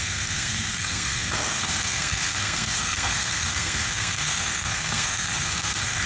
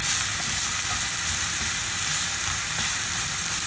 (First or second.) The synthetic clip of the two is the first